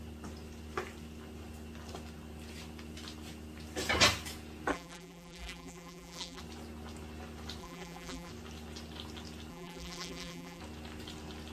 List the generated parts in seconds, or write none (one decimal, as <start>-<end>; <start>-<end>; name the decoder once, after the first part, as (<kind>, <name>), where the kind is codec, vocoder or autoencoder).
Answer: 4.7-6.4 (vocoder, BigVGAN v2); 7.6-8.3; 9.5-10.6